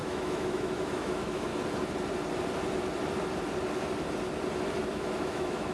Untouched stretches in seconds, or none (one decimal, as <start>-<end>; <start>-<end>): 1.5-4.9